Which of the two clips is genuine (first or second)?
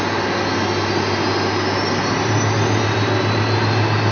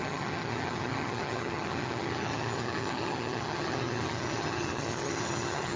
first